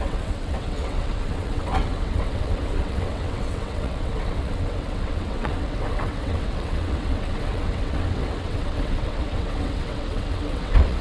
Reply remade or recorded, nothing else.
remade